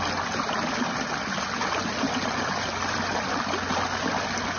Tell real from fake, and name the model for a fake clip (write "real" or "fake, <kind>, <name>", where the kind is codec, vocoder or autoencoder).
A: real